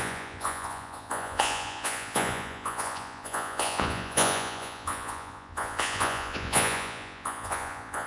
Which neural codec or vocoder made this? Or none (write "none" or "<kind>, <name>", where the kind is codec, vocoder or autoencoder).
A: vocoder, Vocos